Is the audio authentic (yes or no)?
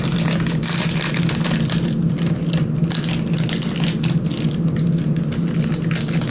yes